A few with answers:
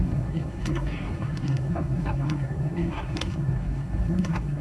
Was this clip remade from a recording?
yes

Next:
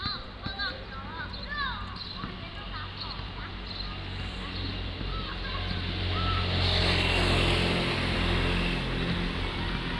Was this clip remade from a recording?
no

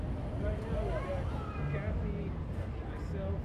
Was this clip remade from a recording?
no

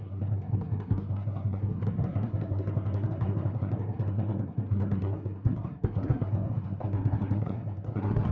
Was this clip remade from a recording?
yes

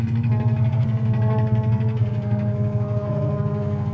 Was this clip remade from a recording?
yes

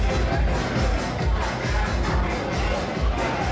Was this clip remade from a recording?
no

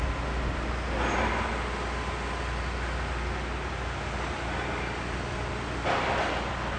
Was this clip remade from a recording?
no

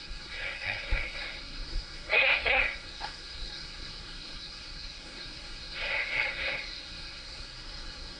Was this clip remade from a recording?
yes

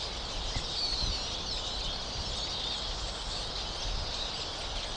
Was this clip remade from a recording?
no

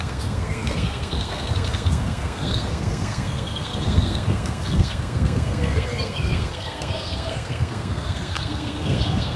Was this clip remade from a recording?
yes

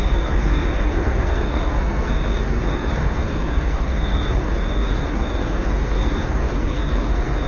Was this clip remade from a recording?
yes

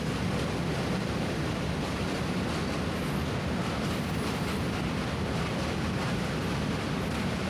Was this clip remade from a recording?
no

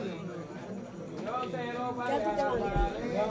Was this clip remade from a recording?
no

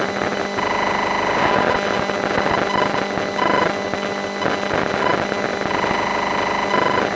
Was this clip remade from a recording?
no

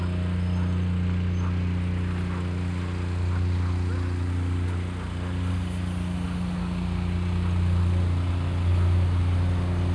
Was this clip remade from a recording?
no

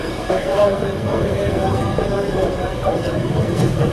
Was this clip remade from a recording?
yes